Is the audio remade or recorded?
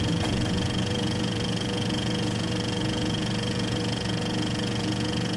remade